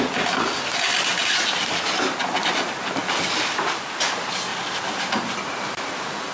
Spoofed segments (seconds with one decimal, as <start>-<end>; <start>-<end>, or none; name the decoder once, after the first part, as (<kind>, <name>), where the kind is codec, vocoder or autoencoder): none